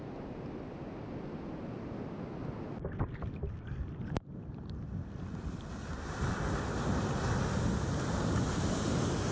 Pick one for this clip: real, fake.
real